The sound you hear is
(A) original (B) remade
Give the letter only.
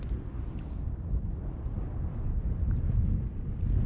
B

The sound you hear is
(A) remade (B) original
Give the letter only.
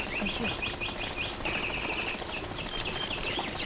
B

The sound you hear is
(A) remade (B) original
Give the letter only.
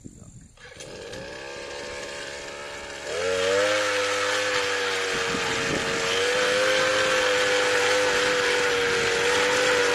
B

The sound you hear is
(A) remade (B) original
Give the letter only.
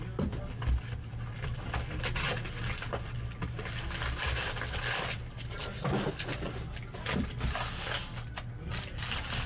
B